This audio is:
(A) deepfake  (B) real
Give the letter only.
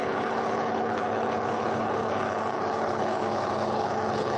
A